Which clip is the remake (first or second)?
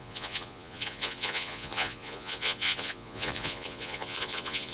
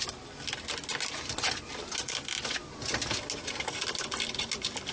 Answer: first